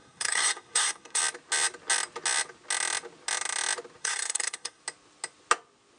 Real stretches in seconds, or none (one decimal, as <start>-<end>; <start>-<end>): 1.2-4.0; 4.8-6.0